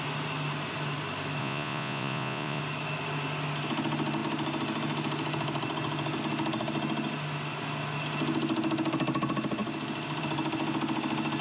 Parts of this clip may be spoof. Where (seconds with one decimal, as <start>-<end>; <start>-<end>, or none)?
1.4-2.6